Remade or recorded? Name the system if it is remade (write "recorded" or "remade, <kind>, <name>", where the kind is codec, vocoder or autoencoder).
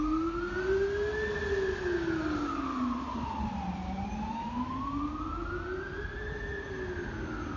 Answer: recorded